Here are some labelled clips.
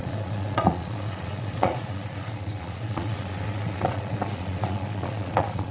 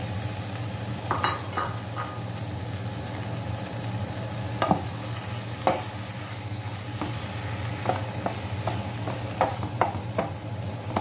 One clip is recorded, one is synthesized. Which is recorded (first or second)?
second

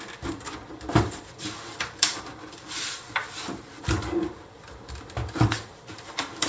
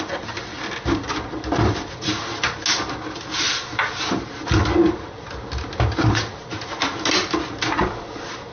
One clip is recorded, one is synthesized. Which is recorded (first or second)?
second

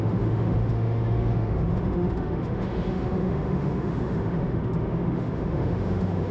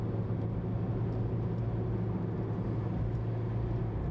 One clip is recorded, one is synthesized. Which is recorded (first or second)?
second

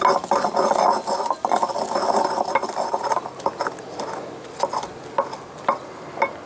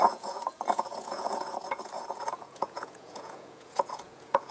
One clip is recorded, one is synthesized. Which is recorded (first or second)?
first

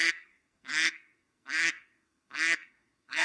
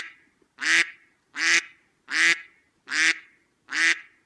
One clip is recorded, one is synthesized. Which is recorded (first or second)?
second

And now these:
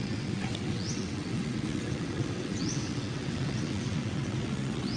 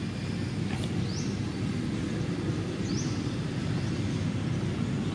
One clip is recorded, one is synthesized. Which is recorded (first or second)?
second